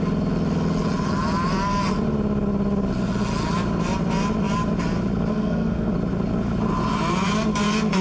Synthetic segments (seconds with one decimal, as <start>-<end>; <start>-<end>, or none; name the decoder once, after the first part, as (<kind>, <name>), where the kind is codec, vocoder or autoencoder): 5.3-5.9 (codec, SNAC)